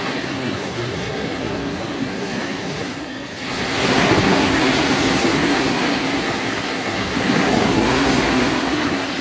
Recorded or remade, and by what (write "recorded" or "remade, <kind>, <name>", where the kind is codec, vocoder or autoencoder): remade, codec, SNAC